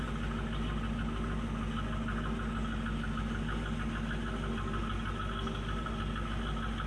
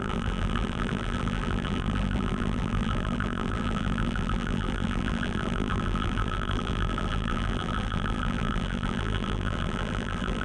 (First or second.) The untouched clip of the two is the first